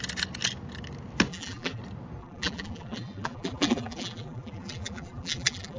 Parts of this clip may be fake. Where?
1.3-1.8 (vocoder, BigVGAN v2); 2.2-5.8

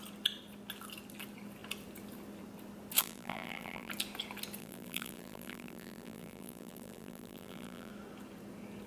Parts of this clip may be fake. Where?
3.0-3.9 (vocoder, BigVGAN v2); 4.6-7.9

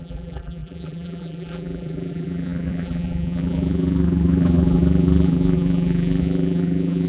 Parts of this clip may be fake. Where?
0.0-7.1 (vocoder, BigVGAN v2)

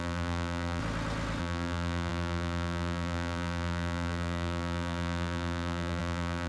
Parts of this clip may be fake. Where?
0.0-0.8 (vocoder, BigVGAN v2); 1.4-6.5

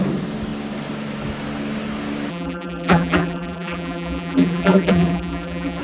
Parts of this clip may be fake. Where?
2.3-5.8 (vocoder, BigVGAN v2)

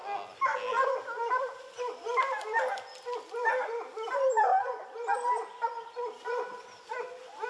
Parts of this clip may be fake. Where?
none